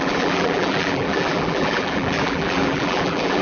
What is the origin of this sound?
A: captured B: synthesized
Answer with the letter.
B